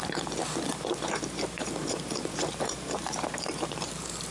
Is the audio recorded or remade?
remade